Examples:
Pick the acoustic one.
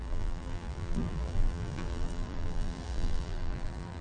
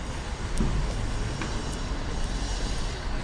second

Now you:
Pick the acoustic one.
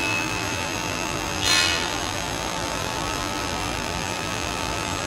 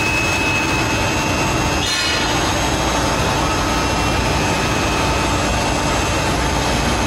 second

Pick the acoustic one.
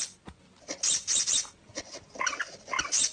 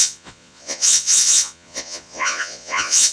first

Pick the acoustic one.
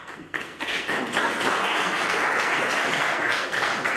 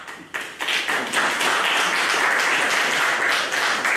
second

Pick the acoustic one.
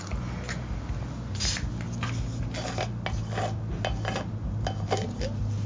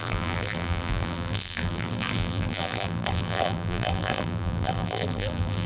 first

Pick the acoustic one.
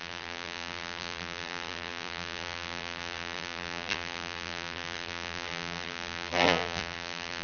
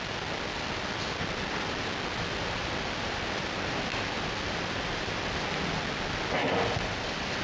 second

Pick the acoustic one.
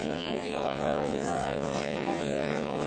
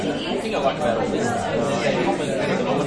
second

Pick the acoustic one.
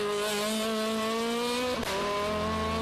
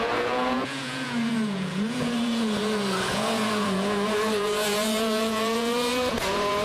first